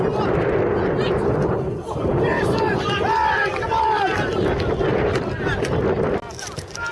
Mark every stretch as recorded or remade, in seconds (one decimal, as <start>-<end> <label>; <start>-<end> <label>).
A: 0.0-6.9 recorded